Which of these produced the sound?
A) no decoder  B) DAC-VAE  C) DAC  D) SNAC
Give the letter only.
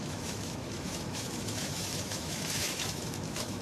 B